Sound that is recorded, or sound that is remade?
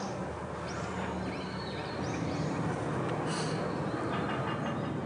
recorded